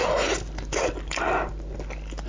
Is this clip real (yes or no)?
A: yes